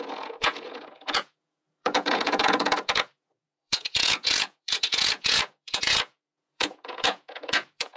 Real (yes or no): no